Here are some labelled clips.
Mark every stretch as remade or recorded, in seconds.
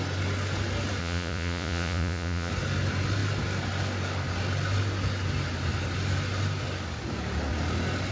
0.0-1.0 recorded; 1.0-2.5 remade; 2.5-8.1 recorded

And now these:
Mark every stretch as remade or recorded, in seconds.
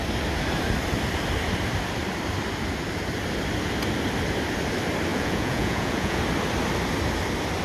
0.0-5.1 recorded; 5.1-6.2 remade; 6.2-7.6 recorded